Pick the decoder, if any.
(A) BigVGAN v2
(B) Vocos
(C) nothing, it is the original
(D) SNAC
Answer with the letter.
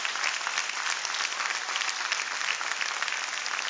C